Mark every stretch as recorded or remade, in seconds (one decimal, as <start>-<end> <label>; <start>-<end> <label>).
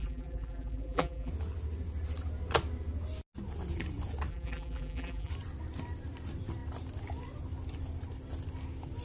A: 0.0-1.3 remade; 1.3-4.3 recorded; 4.3-5.3 remade; 5.3-9.0 recorded